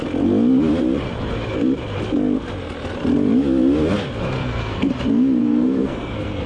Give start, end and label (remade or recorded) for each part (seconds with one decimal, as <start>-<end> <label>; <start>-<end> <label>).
0.0-4.4 recorded; 4.4-4.9 remade; 4.9-5.4 recorded; 5.4-6.5 remade